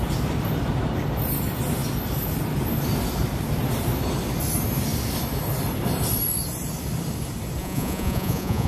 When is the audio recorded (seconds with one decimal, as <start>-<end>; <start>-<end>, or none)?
0.0-7.6

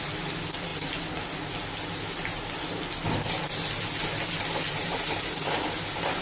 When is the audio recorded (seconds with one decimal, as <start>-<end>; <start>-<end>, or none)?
0.0-6.2

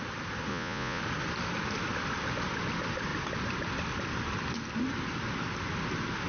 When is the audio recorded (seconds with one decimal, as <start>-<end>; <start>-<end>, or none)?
0.0-0.5; 1.0-6.3